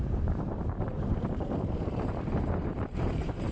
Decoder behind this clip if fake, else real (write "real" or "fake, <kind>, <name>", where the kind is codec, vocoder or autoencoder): fake, vocoder, BigVGAN v2